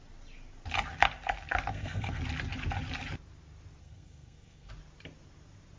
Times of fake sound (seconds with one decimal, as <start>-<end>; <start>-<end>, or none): 1.7-2.2; 3.8-4.7